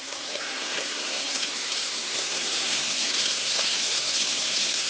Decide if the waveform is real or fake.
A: fake